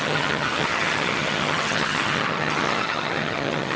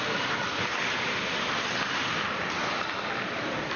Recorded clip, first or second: second